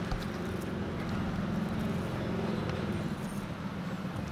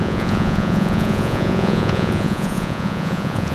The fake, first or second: second